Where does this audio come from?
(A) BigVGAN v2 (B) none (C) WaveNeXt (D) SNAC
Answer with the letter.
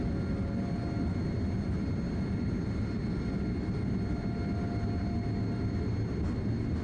B